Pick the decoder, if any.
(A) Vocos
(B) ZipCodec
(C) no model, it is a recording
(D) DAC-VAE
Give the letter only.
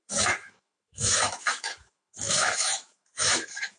D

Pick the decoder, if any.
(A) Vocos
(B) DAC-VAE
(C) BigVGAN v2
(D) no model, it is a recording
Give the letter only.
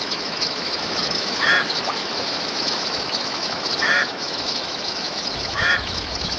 B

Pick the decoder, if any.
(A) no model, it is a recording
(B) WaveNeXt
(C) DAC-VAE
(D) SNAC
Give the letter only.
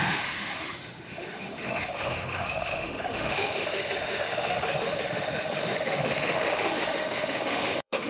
C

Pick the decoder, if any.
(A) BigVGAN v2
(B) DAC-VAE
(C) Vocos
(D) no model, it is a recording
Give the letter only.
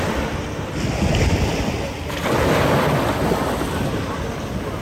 D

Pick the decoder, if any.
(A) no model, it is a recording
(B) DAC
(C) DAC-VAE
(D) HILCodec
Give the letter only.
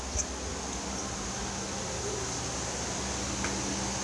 A